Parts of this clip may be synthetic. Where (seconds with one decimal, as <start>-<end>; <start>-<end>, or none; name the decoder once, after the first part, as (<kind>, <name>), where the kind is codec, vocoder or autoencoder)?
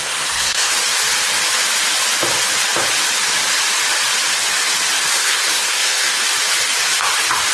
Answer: 0.0-0.7 (codec, SNAC); 5.1-6.2